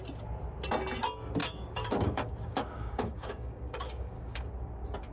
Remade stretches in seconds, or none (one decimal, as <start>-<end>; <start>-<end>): 1.4-4.5